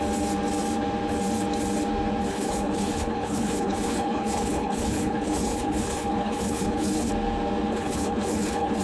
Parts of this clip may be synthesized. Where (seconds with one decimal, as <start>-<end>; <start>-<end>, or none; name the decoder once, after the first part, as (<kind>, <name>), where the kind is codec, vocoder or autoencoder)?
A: 2.3-7.1 (codec, HILCodec); 7.7-8.8

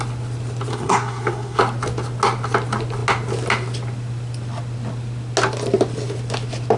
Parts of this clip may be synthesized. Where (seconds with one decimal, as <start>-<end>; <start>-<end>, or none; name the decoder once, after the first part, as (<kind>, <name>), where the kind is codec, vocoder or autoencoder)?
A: 0.7-1.6 (codec, SNAC)